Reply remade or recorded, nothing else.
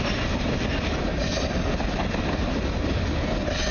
recorded